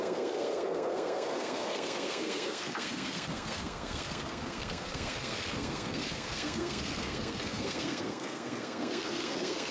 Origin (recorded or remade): remade